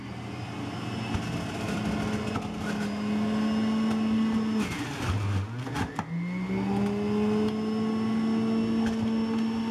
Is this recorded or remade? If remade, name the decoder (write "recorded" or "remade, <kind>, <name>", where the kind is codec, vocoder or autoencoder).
recorded